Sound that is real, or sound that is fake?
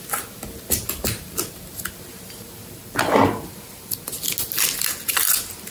real